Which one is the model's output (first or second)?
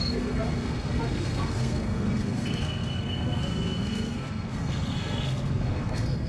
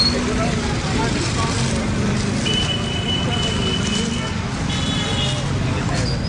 first